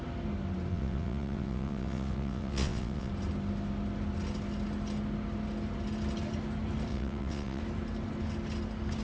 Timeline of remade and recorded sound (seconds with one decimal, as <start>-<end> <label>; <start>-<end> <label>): 0.0-0.7 recorded; 0.7-3.1 remade; 3.1-6.9 recorded; 6.9-7.6 remade; 7.6-9.0 recorded